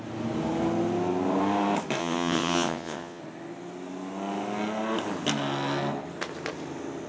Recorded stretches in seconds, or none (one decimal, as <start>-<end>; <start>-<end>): 0.0-2.0; 3.2-7.1